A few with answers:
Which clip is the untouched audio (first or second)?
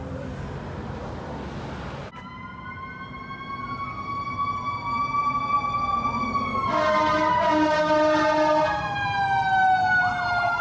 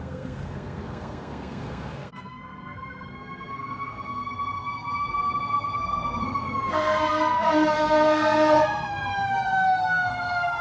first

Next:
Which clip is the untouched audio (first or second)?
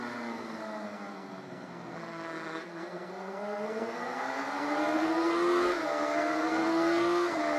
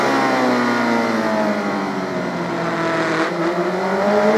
second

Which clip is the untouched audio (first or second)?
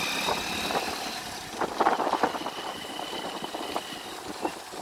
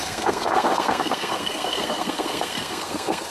first